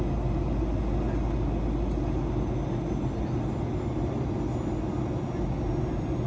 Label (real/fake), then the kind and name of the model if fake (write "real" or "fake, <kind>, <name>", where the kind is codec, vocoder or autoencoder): real